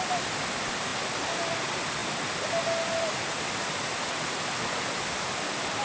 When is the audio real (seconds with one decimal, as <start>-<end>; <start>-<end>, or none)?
0.0-5.8